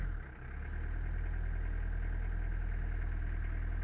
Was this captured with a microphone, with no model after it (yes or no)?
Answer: yes